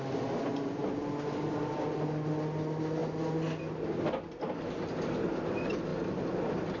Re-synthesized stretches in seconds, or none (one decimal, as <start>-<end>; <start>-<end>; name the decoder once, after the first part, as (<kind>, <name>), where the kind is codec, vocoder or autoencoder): none